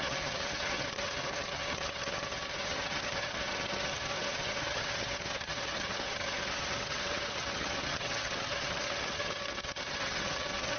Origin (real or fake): fake